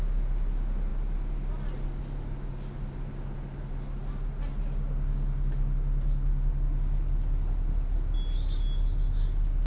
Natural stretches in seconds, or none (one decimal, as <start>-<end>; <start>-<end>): 0.0-9.7